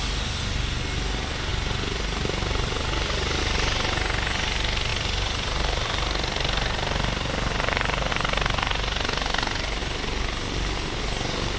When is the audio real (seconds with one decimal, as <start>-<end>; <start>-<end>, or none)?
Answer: 0.0-1.5; 3.4-4.9; 8.1-11.6

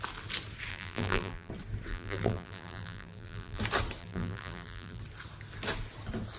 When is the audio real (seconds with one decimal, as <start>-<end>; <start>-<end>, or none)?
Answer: 0.0-0.7; 1.5-1.9; 3.6-4.0; 5.0-6.4

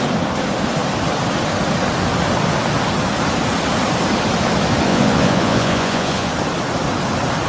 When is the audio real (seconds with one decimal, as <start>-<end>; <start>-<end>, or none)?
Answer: 0.0-4.9; 6.3-7.5

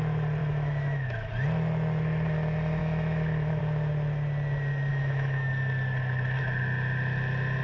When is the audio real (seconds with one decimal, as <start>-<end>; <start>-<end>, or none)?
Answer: 0.0-0.4; 1.3-2.8; 3.6-4.9; 5.5-7.6